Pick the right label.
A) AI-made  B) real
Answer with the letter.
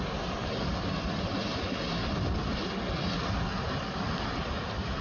B